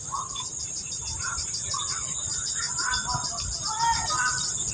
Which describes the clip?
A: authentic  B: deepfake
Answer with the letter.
A